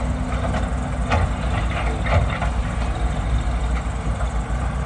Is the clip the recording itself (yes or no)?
yes